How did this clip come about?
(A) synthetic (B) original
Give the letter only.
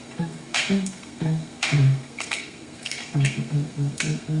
A